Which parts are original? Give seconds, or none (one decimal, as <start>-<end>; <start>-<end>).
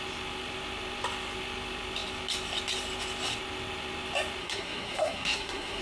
0.0-4.4